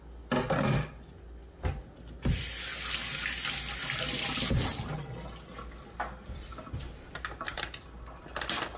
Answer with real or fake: real